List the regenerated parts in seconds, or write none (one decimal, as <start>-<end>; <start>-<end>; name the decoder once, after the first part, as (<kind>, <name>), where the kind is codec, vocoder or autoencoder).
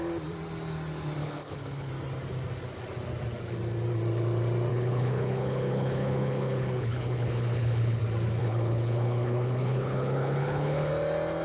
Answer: 1.2-1.9 (codec, HILCodec); 4.7-8.0; 8.4-10.9